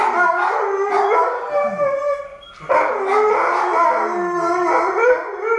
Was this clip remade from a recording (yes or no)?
no